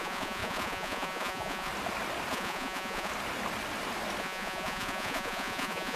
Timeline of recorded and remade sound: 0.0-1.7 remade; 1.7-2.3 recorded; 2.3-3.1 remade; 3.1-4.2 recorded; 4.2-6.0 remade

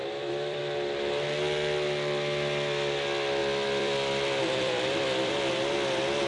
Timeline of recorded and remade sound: 0.0-0.6 remade; 0.6-3.4 recorded; 3.4-5.3 remade; 5.3-6.3 recorded